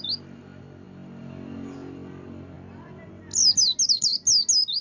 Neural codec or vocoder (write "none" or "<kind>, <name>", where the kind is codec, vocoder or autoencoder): none